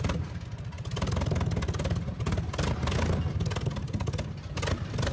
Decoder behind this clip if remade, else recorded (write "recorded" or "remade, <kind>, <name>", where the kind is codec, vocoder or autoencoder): recorded